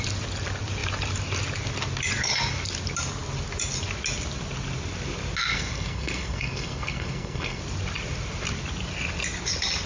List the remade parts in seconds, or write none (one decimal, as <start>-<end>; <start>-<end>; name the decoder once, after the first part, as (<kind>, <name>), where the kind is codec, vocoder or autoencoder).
5.5-7.6 (codec, SNAC)

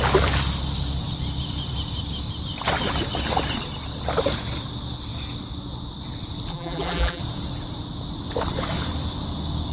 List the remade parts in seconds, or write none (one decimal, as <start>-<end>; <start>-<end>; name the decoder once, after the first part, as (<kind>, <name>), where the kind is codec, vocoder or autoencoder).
6.5-7.2 (vocoder, BigVGAN v2)

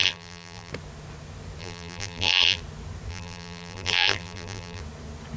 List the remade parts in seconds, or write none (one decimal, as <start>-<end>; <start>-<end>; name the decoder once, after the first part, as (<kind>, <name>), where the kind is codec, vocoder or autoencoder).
0.0-0.7 (vocoder, BigVGAN v2); 1.6-2.6; 3.1-4.8

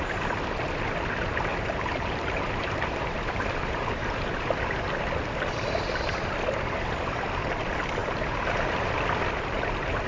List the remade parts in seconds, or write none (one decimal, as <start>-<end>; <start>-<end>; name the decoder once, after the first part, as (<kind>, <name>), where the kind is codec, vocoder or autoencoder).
1.5-4.9 (vocoder, BigVGAN v2); 8.0-8.9